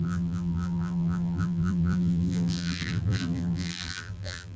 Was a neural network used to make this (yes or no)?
yes